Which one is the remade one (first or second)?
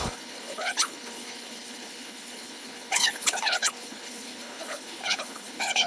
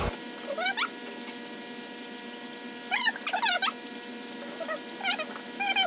first